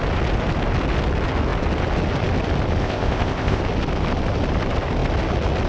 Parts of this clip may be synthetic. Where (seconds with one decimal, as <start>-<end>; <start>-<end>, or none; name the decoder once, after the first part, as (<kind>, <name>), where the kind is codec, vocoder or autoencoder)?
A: 2.8-3.6 (codec, ZipCodec)